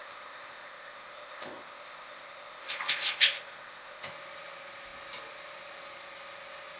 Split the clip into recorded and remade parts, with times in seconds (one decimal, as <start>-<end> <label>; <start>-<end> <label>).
0.0-4.1 remade; 4.1-6.8 recorded